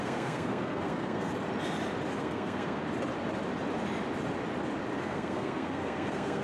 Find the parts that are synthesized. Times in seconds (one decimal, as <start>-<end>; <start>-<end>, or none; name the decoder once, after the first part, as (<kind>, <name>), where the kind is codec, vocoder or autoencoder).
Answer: 0.0-1.3 (codec, SNAC); 2.2-2.8; 5.0-6.4